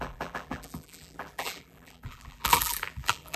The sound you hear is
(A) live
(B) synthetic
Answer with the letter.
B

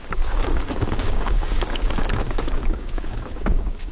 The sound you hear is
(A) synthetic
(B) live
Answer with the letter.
A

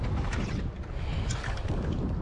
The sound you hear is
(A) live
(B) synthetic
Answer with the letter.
A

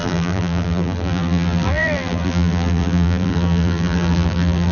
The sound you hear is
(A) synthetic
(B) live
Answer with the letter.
A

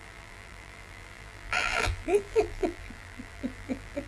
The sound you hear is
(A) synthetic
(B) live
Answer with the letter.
A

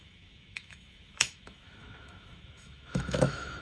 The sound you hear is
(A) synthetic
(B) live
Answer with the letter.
A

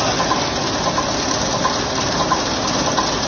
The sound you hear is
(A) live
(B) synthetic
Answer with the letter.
A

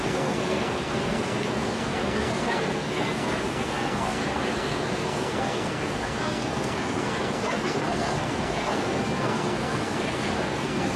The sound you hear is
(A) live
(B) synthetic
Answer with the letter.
B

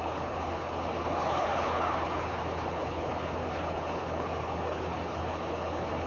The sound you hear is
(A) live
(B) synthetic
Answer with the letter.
B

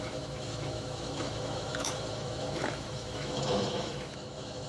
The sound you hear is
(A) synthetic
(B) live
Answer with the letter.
A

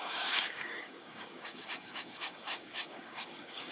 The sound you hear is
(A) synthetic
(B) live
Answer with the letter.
A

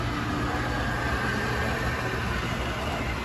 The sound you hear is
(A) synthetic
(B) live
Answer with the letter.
B